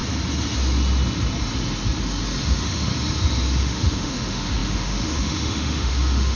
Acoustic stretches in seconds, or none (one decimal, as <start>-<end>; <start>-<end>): 0.0-2.4; 2.9-3.6